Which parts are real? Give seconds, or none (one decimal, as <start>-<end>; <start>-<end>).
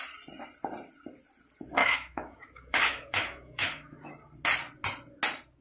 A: 0.0-1.8; 4.1-5.6